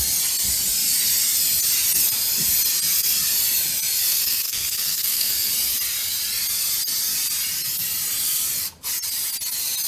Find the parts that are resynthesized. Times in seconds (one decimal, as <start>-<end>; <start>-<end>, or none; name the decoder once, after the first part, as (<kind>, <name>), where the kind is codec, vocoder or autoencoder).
4.1-5.5 (codec, SNAC)